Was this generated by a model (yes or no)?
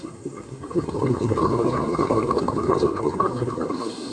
yes